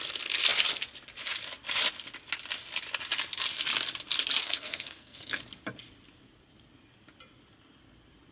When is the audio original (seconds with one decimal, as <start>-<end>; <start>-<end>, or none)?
0.0-4.4; 5.4-8.3